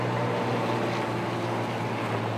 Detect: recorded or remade recorded